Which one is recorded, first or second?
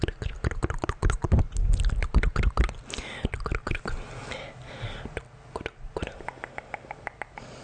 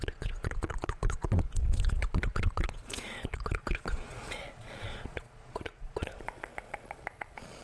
first